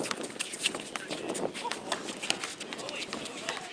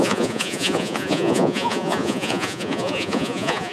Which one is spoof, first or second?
second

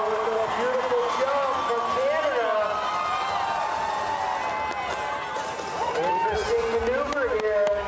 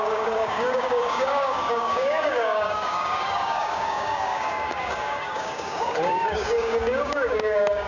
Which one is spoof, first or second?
second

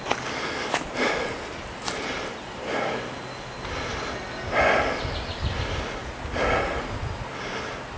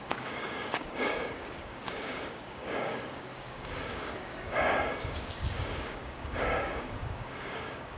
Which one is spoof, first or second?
second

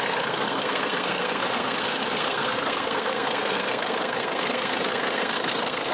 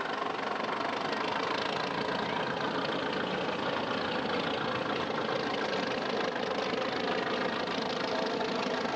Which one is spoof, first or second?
first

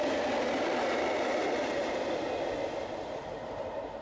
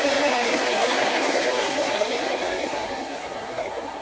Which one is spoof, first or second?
second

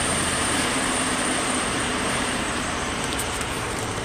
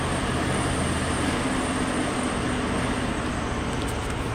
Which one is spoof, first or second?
first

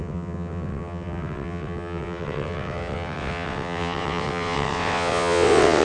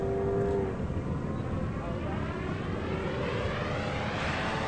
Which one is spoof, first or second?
first